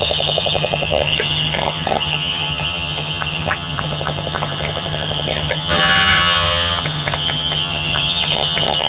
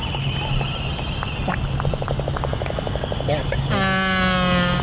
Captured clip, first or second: second